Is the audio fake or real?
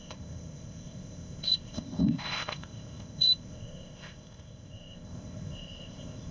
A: fake